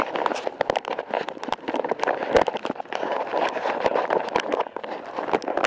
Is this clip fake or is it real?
real